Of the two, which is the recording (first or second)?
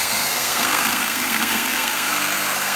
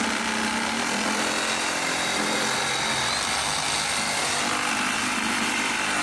second